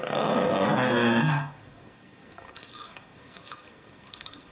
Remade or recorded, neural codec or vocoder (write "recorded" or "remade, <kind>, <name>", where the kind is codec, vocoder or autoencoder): remade, codec, SNAC